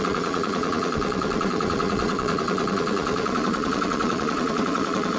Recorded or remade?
remade